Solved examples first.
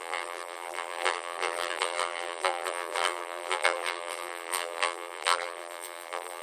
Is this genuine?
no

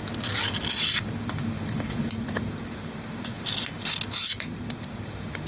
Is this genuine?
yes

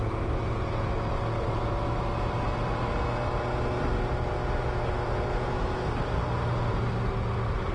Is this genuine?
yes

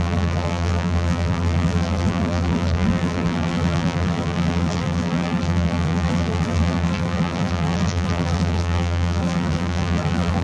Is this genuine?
no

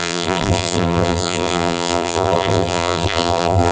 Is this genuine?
no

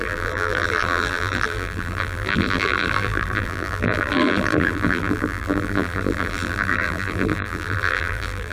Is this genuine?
no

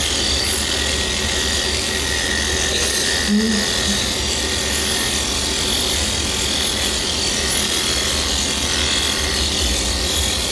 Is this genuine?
yes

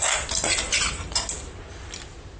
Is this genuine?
yes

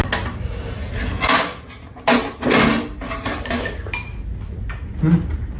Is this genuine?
yes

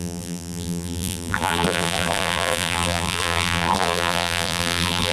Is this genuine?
no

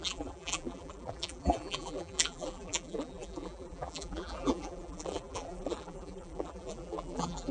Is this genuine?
no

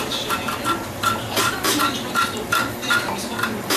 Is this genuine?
no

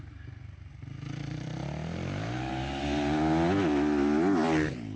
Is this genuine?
yes